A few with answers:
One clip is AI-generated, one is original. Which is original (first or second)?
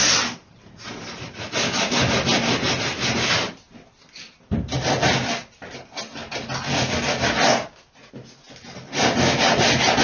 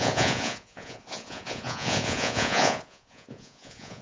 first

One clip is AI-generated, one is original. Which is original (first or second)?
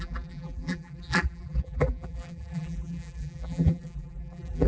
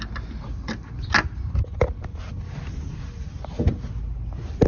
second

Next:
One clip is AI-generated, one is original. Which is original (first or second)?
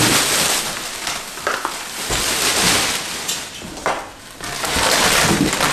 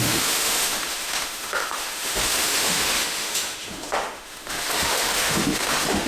first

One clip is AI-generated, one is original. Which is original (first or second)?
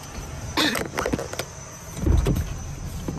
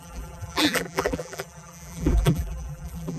first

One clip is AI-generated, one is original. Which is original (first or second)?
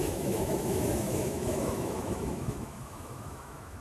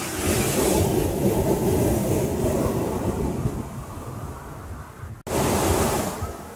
second